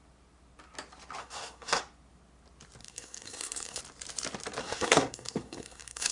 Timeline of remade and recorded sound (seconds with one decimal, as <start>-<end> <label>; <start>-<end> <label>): 0.0-1.2 recorded; 1.2-1.8 remade; 1.8-2.8 recorded; 2.8-3.8 remade; 3.8-4.6 recorded; 4.6-6.1 remade